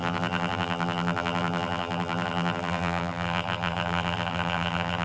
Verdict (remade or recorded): remade